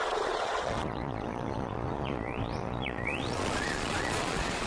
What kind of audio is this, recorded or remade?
remade